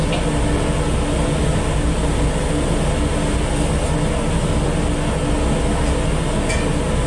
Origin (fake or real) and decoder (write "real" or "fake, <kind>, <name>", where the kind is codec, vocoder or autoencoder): real